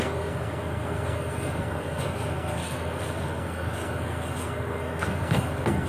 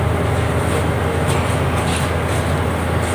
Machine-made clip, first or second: first